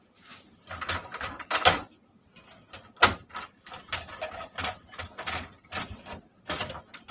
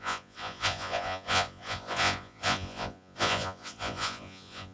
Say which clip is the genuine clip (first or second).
first